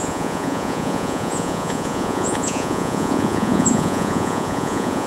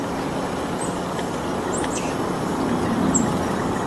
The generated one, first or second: first